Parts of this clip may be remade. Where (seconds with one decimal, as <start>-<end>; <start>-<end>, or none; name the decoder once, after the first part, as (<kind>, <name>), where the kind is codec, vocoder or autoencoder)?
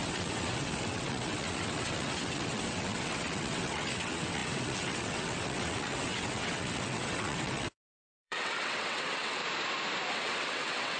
0.0-9.4 (vocoder, WaveNeXt); 10.1-11.0